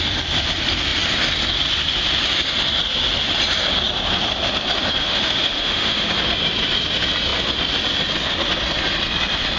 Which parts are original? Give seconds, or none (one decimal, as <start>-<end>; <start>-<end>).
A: 0.0-5.0; 6.1-9.6